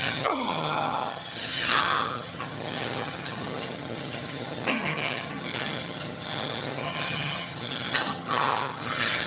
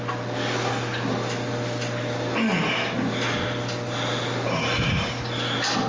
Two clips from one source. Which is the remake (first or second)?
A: first